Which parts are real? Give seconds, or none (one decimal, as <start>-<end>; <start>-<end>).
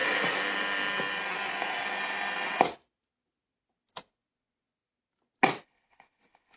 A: 0.0-4.0; 4.8-5.6